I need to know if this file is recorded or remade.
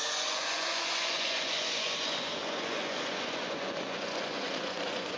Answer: remade